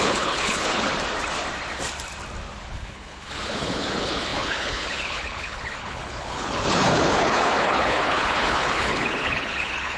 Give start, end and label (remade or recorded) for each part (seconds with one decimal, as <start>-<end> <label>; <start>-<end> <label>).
0.0-0.9 remade; 0.9-2.7 recorded; 2.7-10.0 remade